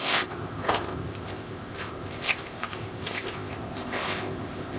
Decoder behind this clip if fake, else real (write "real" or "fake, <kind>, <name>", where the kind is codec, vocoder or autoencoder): fake, codec, ZipCodec